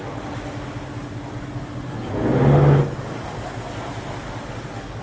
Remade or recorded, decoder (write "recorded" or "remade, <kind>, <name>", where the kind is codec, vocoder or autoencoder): recorded